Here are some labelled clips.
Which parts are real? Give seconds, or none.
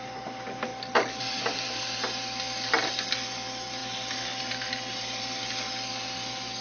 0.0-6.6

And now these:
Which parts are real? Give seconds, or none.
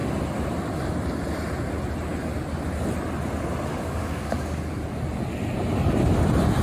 0.0-3.7; 4.6-6.6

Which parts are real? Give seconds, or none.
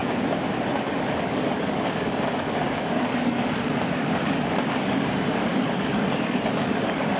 0.0-0.9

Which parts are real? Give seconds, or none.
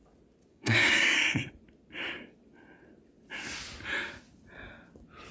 0.0-0.5; 1.5-5.3